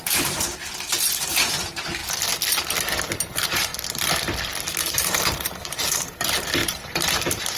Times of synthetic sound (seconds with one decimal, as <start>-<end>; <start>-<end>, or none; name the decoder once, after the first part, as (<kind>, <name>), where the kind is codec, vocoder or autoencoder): 0.0-2.0 (vocoder, BigVGAN v2); 3.3-3.7; 4.7-7.6

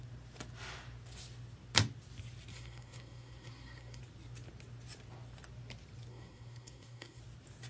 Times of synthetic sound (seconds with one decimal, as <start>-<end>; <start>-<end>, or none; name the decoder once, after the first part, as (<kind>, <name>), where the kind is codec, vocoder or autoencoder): 2.5-4.0 (codec, SNAC); 6.1-7.2

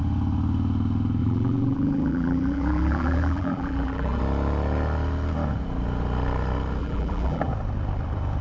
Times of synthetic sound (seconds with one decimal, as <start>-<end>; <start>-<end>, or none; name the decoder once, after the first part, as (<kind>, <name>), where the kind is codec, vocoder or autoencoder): 1.2-4.2 (vocoder, BigVGAN v2); 6.8-7.5